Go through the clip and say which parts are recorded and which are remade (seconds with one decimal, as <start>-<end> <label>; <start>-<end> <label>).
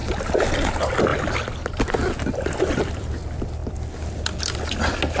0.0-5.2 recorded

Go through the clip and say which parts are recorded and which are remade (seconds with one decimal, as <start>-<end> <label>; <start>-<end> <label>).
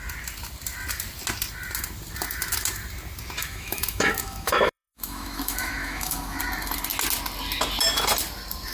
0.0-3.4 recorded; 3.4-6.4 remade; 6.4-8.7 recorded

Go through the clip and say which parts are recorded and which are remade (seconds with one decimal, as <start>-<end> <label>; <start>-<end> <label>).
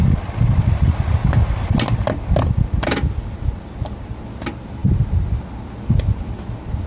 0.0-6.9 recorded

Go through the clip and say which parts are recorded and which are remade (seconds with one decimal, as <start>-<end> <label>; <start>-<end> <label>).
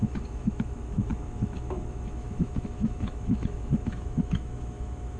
0.0-5.2 remade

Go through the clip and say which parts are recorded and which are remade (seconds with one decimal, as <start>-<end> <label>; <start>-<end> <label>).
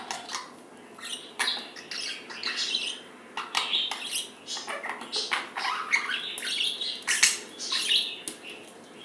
0.0-9.0 recorded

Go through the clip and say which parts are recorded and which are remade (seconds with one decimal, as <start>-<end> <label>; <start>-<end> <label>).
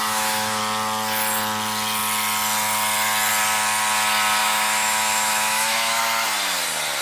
0.0-0.6 remade; 0.6-4.4 recorded; 4.4-6.0 remade; 6.0-7.0 recorded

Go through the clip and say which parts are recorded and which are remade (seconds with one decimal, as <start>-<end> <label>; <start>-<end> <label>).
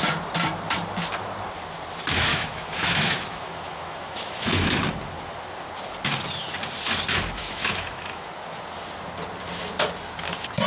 0.0-2.3 recorded; 2.3-4.8 remade; 4.8-7.4 recorded; 7.4-8.3 remade; 8.3-10.7 recorded